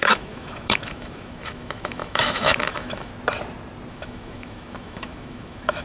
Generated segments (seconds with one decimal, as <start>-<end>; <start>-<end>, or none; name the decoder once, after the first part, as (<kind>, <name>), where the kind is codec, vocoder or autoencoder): 0.0-3.1 (autoencoder, DAC-VAE); 3.9-5.8